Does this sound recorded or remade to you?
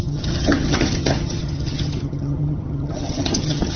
remade